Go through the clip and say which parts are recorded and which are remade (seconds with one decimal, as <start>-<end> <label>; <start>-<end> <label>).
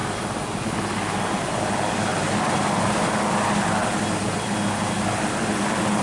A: 0.0-6.0 recorded